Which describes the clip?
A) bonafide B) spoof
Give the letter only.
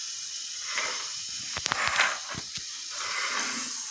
A